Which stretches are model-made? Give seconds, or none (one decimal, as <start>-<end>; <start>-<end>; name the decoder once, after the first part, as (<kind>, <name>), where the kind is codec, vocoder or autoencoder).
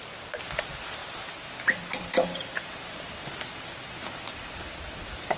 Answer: none